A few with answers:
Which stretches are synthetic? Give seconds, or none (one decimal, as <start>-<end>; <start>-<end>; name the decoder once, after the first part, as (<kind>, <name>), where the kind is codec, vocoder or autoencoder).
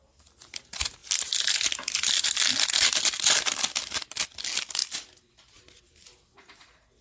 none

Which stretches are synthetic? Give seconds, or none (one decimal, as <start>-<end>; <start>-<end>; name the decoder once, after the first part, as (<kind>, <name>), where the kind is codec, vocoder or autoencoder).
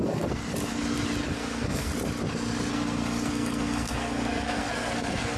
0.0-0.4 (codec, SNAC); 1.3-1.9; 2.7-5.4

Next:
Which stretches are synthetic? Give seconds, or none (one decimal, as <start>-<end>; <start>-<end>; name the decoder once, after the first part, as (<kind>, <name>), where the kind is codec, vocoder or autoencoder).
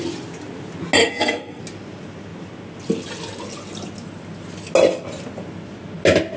1.0-1.6 (codec, SNAC)